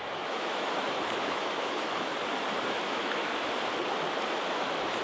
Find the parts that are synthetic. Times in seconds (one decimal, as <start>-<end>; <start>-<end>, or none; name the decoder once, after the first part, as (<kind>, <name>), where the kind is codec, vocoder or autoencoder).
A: 0.0-2.1 (autoencoder, DAC-VAE); 2.7-3.3; 4.5-5.0